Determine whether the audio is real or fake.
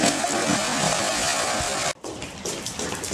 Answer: real